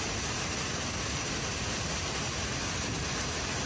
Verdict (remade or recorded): recorded